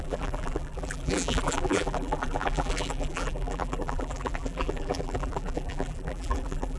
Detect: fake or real fake